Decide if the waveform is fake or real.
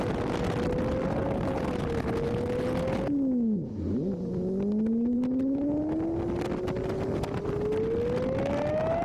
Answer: real